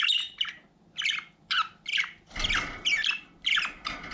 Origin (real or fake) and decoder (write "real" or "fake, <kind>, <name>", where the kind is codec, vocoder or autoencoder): real